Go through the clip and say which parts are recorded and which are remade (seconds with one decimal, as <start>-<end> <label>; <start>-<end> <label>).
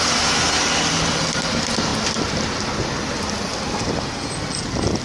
0.0-5.0 recorded